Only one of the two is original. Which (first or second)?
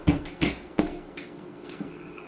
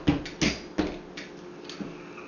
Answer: second